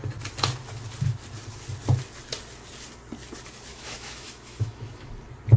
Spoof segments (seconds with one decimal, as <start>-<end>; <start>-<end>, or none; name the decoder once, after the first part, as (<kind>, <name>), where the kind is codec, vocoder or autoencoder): 3.7-5.1 (autoencoder, DAC-VAE)

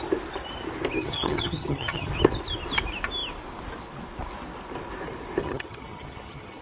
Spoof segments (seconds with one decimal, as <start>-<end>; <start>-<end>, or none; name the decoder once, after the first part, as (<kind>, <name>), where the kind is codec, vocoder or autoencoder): 1.0-2.1 (vocoder, HiFi-GAN); 5.4-6.6

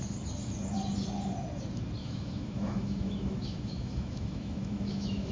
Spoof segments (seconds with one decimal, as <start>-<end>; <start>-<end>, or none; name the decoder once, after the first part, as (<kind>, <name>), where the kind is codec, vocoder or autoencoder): 2.0-5.3 (autoencoder, DAC-VAE)

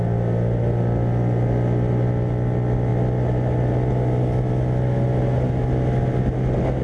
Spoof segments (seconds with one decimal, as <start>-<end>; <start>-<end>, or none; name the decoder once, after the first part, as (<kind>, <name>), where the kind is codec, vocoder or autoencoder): none

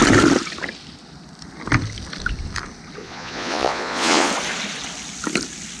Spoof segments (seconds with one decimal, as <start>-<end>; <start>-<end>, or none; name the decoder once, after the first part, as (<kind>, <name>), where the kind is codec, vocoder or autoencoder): 3.0-4.3 (vocoder, Vocos)

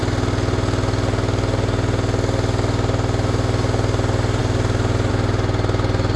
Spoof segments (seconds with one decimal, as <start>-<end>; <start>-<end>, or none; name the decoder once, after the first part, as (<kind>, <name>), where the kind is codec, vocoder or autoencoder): none

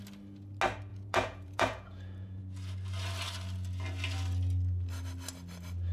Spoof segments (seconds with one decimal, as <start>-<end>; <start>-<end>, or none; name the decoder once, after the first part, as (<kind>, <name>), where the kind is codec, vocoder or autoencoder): 0.9-2.4 (vocoder, Vocos)

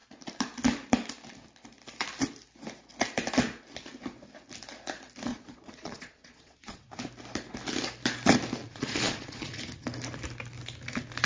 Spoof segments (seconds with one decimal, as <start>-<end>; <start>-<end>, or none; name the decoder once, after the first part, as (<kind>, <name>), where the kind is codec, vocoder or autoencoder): 5.3-7.0 (vocoder, Vocos); 8.6-9.6